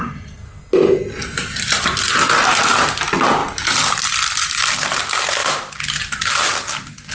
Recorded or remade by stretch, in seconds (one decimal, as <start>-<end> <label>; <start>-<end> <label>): 0.0-3.4 recorded; 3.4-4.0 remade; 4.0-7.1 recorded